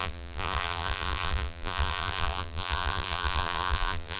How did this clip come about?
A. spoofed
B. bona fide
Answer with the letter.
A